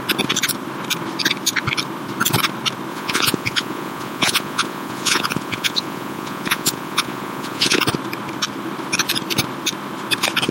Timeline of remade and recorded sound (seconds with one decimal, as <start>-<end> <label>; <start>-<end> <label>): 0.0-2.9 recorded; 2.9-7.8 remade; 7.8-10.5 recorded

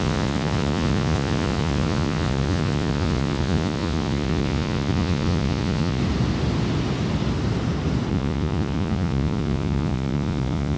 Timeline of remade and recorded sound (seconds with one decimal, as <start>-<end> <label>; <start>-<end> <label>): 0.0-6.0 remade; 6.0-8.1 recorded; 8.1-10.8 remade

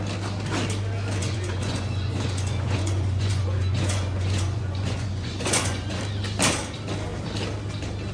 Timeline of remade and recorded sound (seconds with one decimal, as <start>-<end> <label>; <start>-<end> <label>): 0.0-1.2 recorded; 1.2-6.0 remade; 6.0-8.1 recorded

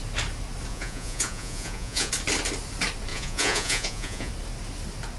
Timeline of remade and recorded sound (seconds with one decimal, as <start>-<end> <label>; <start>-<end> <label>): 0.0-0.7 recorded; 0.7-2.1 remade; 2.1-3.1 recorded; 3.1-4.3 remade; 4.3-5.2 recorded

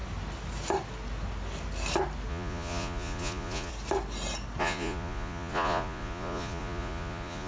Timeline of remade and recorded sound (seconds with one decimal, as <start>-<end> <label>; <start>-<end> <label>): 0.0-2.3 recorded; 2.3-3.7 remade; 3.7-4.6 recorded; 4.6-7.5 remade